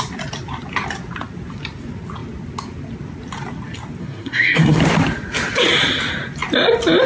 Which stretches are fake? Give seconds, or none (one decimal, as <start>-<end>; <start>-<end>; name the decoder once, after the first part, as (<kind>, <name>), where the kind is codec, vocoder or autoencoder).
4.0-4.8 (codec, SNAC)